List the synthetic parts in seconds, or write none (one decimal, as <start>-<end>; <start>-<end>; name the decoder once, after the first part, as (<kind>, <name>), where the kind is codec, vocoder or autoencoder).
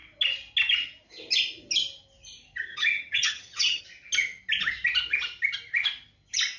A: 2.7-3.8 (vocoder, HiFi-GAN)